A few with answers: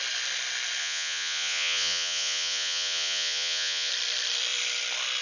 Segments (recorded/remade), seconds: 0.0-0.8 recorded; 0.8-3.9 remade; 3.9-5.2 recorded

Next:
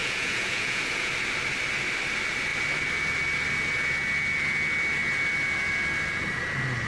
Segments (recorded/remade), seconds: 0.0-1.1 remade; 1.1-6.9 recorded

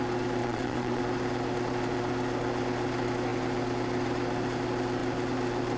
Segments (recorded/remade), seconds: 0.0-0.4 recorded; 0.4-1.0 remade; 1.0-5.8 recorded

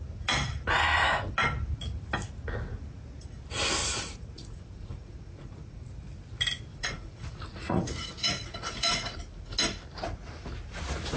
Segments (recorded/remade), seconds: 0.0-3.8 recorded; 3.8-6.1 remade; 6.1-6.7 recorded; 6.7-9.0 remade; 9.0-11.2 recorded